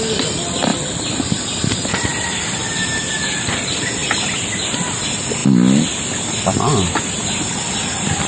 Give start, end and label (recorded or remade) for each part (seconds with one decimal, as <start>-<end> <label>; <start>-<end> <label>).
0.0-0.7 remade; 0.7-1.6 recorded; 1.6-2.1 remade; 2.1-2.6 recorded; 2.6-4.0 remade; 4.0-4.8 recorded; 4.8-5.4 remade; 5.4-6.4 recorded; 6.4-8.3 remade